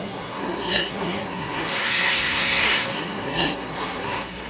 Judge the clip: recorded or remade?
remade